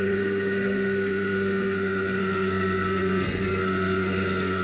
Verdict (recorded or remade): remade